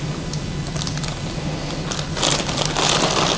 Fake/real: real